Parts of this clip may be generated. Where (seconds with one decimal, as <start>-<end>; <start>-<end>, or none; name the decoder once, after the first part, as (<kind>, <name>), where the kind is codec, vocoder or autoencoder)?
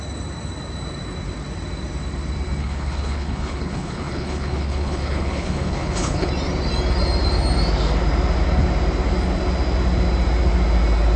2.6-6.3 (codec, HILCodec)